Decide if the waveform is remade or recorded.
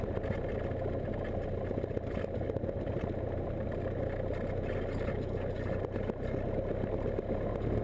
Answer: recorded